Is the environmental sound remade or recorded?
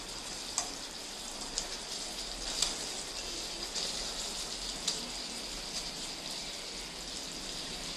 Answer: recorded